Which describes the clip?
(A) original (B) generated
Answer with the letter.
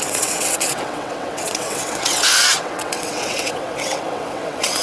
B